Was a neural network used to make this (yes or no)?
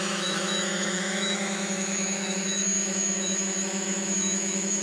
yes